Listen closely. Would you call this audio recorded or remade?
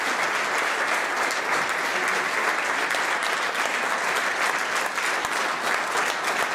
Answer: recorded